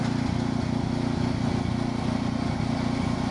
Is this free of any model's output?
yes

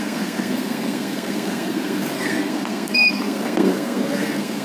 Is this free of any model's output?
no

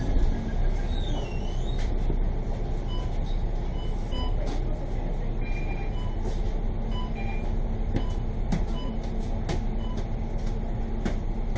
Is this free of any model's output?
yes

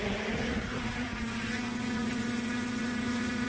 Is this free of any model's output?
no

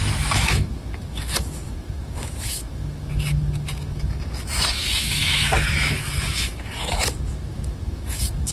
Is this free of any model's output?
no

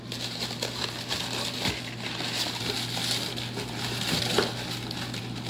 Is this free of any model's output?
yes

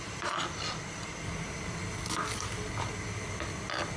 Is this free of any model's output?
yes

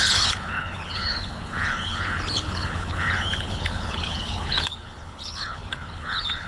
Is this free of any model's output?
no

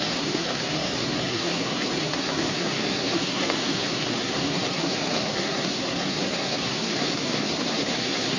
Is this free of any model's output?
no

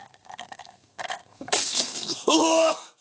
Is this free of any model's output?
no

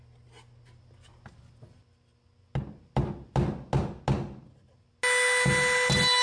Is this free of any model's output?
yes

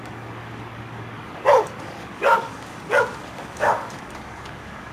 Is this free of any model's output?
no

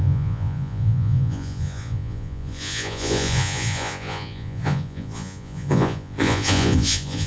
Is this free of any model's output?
no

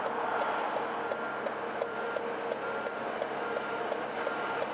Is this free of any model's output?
yes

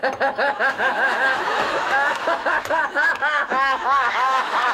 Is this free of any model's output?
no